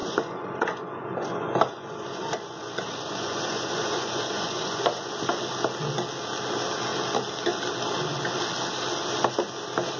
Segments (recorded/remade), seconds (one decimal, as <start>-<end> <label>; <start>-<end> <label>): 0.0-5.1 remade; 5.1-10.0 recorded